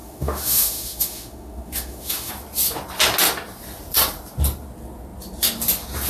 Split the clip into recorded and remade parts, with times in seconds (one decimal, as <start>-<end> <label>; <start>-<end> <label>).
0.0-2.3 remade; 2.3-6.1 recorded